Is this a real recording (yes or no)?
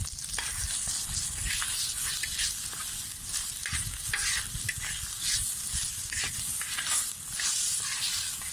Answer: yes